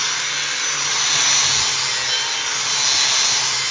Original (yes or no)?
yes